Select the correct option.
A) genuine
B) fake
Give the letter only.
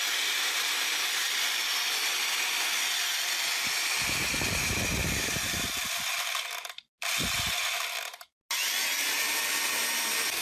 A